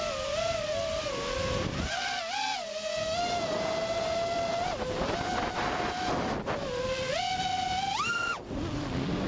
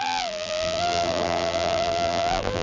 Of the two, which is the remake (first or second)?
second